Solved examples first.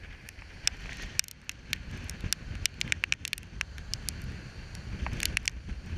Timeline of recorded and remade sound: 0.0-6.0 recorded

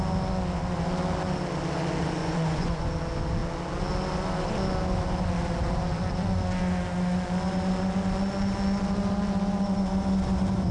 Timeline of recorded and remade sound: 0.0-2.2 recorded; 2.2-2.9 remade; 2.9-10.7 recorded

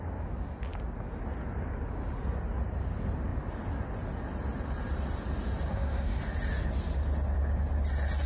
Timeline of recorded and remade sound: 0.0-5.7 recorded; 5.7-6.2 remade; 6.2-8.3 recorded

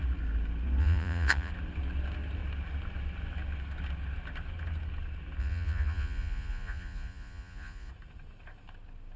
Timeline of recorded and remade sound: 0.0-0.8 recorded; 0.8-1.5 remade; 1.5-5.4 recorded; 5.4-7.9 remade; 7.9-9.2 recorded

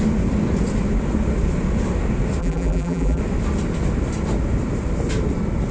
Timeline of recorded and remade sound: 0.0-2.4 recorded; 2.4-3.2 remade; 3.2-5.7 recorded

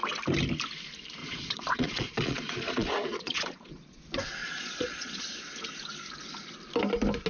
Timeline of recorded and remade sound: 0.0-1.2 recorded; 1.2-4.0 remade; 4.0-4.4 recorded; 4.4-5.2 remade; 5.2-7.3 recorded